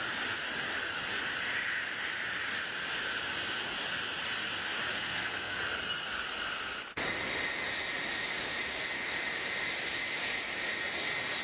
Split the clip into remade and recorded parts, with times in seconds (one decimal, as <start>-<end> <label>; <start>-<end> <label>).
0.0-4.9 recorded; 4.9-5.6 remade; 5.6-11.4 recorded